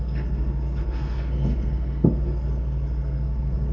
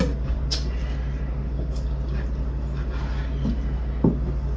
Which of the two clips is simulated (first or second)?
first